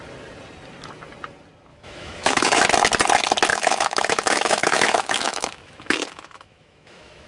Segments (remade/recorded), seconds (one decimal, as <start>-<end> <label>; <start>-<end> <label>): 0.0-1.7 recorded; 1.7-2.6 remade; 2.6-3.5 recorded; 3.5-7.3 remade